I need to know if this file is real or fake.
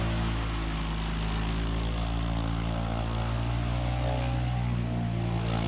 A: real